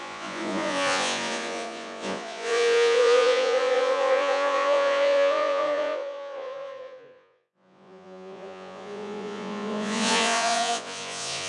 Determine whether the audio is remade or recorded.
remade